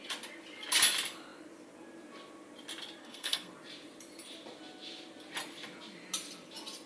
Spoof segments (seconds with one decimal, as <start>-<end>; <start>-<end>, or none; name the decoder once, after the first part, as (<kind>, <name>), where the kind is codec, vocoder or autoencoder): 3.0-3.5 (codec, SNAC)